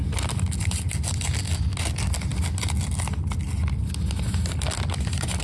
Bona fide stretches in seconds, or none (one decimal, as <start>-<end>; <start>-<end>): 0.0-5.4